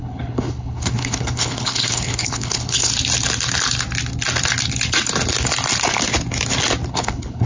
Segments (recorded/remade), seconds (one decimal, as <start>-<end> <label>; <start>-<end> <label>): 0.0-2.9 remade; 2.9-6.9 recorded; 6.9-7.5 remade